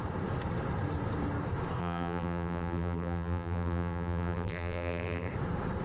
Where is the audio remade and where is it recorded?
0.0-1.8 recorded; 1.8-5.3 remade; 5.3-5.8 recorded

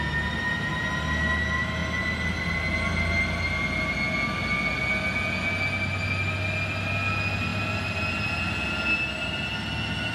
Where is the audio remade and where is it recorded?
0.0-10.1 recorded

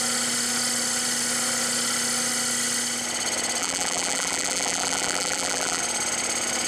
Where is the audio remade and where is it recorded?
0.0-3.6 recorded; 3.6-5.8 remade; 5.8-6.7 recorded

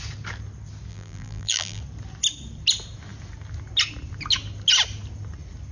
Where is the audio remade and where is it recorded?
0.0-0.9 recorded; 0.9-1.8 remade; 1.8-5.7 recorded

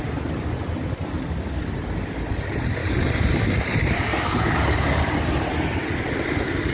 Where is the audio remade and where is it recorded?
0.0-2.8 recorded; 2.8-5.8 remade; 5.8-6.7 recorded

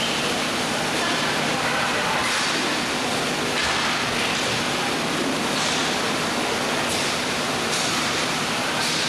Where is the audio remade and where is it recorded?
0.0-2.2 remade; 2.2-5.2 recorded; 5.2-5.8 remade; 5.8-6.5 recorded; 6.5-9.1 remade

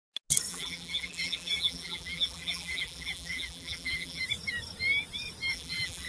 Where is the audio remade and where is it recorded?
0.0-0.5 recorded; 0.5-4.2 remade; 4.2-5.5 recorded; 5.5-6.1 remade